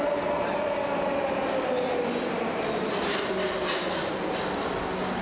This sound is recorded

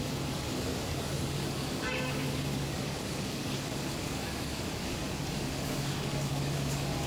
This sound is remade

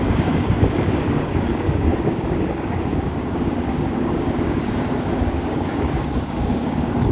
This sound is remade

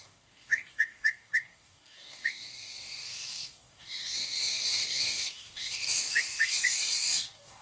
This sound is remade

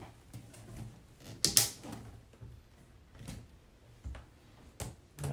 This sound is recorded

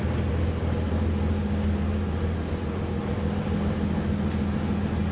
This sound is recorded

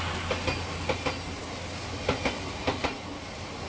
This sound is recorded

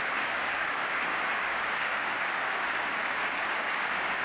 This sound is remade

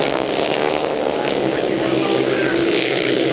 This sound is remade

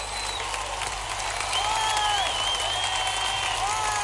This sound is recorded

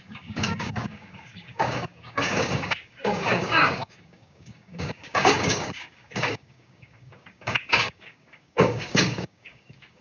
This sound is remade